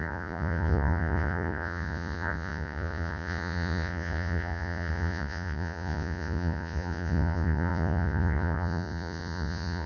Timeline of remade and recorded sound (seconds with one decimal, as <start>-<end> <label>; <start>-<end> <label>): 0.0-9.9 remade